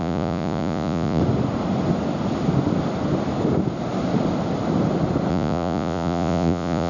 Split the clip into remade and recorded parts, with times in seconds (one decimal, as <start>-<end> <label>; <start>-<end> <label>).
0.0-1.2 remade; 1.2-5.3 recorded; 5.3-6.9 remade